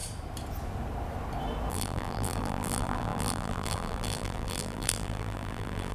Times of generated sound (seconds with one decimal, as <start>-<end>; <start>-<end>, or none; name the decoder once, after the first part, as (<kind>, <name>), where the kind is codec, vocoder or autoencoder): 1.7-5.9 (vocoder, BigVGAN v2)